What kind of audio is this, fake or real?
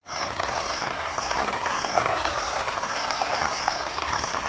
fake